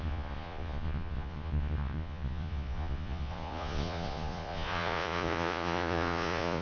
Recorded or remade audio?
remade